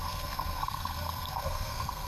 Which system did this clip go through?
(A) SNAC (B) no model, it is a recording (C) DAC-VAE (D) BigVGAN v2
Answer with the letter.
A